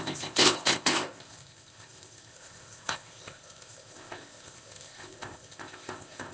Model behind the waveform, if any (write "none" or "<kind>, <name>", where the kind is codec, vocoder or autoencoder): codec, ZipCodec